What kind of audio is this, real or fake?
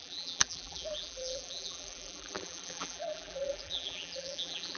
fake